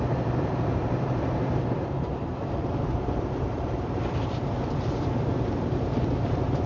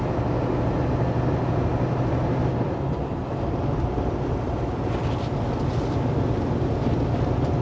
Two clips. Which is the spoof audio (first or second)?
first